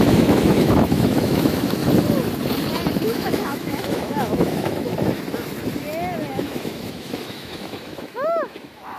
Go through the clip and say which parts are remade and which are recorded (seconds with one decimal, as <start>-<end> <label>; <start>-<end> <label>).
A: 0.0-1.8 remade; 1.8-3.0 recorded; 3.0-4.9 remade; 4.9-6.3 recorded; 6.3-9.0 remade